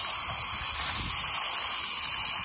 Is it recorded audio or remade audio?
recorded